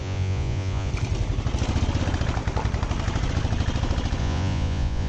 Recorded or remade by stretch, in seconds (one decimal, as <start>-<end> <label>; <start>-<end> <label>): 0.0-0.9 remade; 0.9-4.2 recorded; 4.2-5.1 remade